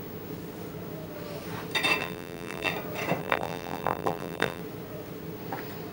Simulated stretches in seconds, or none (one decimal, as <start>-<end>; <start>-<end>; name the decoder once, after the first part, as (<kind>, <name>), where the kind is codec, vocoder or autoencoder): 2.0-2.7 (vocoder, BigVGAN v2); 3.2-4.6